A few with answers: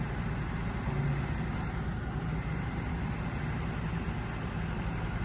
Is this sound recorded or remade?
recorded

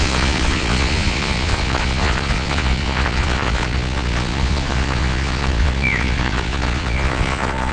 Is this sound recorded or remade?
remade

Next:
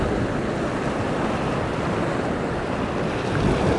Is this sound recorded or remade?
recorded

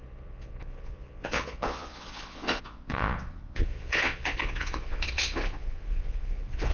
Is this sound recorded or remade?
remade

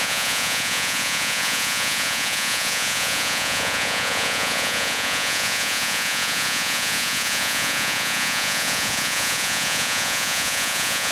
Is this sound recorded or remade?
remade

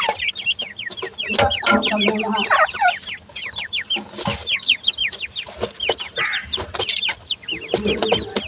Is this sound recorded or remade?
recorded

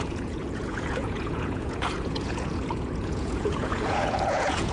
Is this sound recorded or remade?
remade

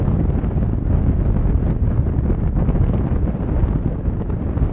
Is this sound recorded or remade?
recorded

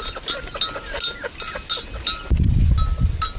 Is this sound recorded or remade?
recorded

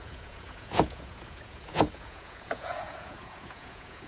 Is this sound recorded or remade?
remade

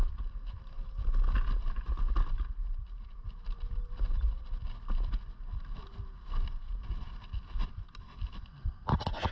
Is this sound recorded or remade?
recorded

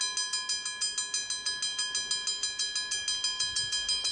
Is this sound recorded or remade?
recorded